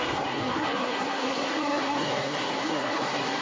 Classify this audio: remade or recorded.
remade